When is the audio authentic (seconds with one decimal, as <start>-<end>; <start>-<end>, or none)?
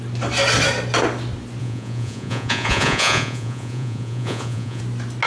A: 0.0-1.6; 4.8-5.3